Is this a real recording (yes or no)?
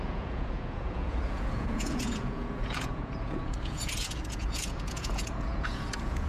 no